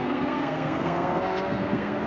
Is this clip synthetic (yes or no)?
yes